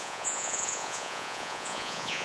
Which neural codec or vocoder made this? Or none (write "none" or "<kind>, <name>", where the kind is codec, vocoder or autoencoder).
vocoder, Vocos